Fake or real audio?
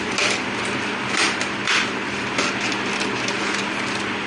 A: real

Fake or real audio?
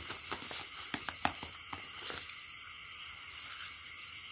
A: real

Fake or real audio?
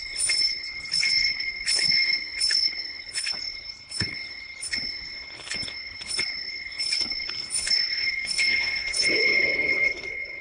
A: fake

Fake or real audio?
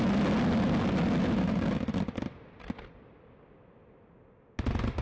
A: real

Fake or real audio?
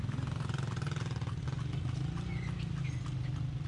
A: real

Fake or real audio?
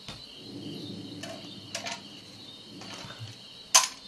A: real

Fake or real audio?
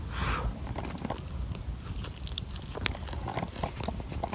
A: real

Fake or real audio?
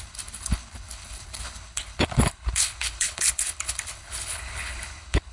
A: fake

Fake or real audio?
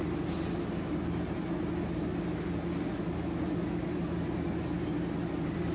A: real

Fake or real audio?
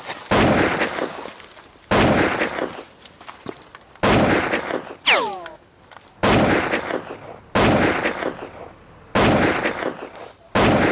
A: real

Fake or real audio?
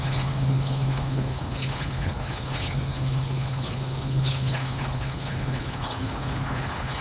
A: fake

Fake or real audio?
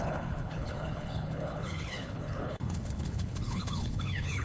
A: fake